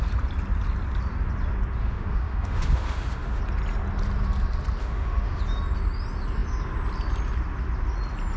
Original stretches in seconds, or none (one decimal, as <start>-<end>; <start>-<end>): 0.0-1.8; 3.4-4.8; 5.4-8.4